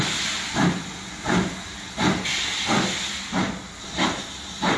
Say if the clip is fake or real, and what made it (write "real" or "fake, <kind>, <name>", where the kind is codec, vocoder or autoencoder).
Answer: real